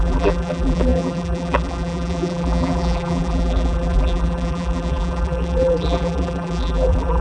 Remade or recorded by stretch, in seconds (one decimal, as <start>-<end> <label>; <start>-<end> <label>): 0.0-7.2 remade